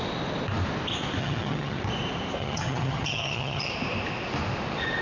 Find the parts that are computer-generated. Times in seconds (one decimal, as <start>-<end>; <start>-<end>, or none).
1.2-1.8; 2.4-3.7